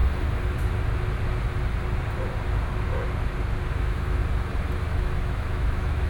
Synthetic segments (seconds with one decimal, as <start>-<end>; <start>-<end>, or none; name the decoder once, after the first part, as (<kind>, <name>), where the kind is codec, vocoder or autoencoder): 3.7-4.2 (autoencoder, DAC-VAE); 4.8-6.1